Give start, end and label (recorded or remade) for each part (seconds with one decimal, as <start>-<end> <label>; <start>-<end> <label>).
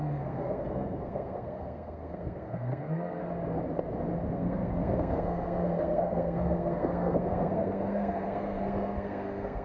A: 0.0-3.2 remade; 3.2-4.3 recorded; 4.3-9.6 remade